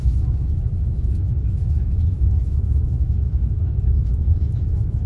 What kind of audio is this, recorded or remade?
remade